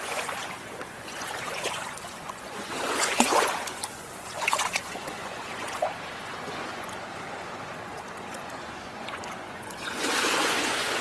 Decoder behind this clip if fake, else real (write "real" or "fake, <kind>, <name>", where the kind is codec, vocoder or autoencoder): fake, vocoder, Vocos